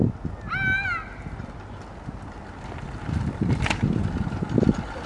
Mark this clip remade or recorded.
recorded